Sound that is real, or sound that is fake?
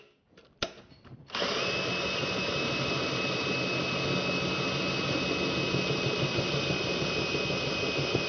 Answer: real